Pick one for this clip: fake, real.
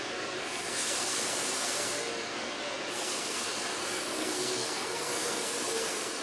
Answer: fake